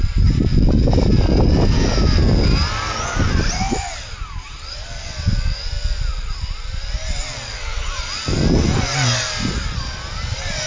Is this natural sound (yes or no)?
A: yes